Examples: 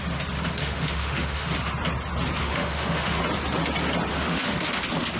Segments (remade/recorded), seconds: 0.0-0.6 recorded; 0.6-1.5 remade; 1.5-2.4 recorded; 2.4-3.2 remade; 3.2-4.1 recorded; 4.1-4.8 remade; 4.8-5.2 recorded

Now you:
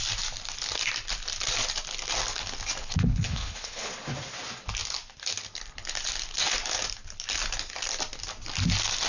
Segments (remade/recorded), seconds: 0.0-2.8 recorded; 2.8-3.9 remade; 3.9-9.1 recorded

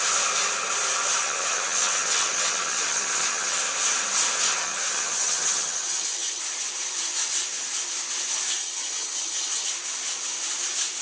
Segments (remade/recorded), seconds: 0.0-1.2 recorded; 1.2-3.6 remade; 3.6-4.5 recorded; 4.5-6.4 remade; 6.4-8.6 recorded; 8.6-9.7 remade; 9.7-11.0 recorded

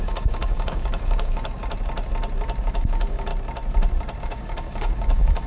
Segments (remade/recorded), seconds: 0.0-1.6 remade; 1.6-2.7 recorded; 2.7-3.3 remade; 3.3-4.2 recorded; 4.2-5.5 remade

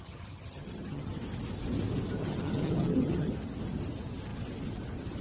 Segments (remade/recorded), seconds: 0.0-1.1 remade; 1.1-2.2 recorded; 2.2-3.3 remade; 3.3-5.2 recorded

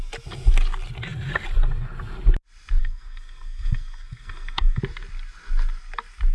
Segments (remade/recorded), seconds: 0.0-2.8 recorded; 2.8-4.8 remade; 4.8-6.3 recorded

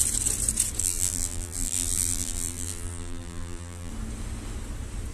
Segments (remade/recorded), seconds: 0.0-0.8 recorded; 0.8-3.9 remade; 3.9-5.1 recorded